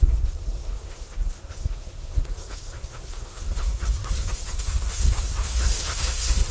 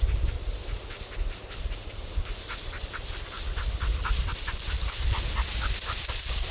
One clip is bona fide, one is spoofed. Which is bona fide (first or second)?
second